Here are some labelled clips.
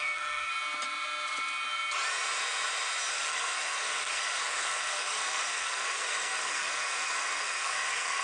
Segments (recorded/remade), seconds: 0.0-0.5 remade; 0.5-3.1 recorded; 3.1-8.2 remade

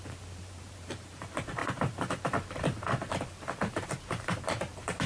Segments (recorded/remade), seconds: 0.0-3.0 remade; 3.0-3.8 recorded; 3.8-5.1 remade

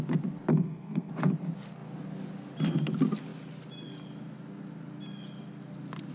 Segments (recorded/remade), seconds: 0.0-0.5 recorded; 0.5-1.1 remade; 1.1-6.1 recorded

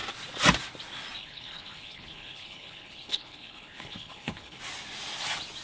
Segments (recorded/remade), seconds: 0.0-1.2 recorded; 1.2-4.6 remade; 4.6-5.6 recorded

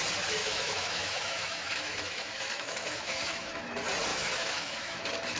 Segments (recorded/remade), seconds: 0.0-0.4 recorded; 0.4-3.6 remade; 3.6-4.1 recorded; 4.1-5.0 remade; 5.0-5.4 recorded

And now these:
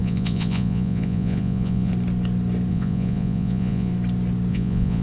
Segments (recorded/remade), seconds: 0.0-1.9 remade; 1.9-2.7 recorded; 2.7-3.9 remade; 3.9-4.5 recorded; 4.5-5.0 remade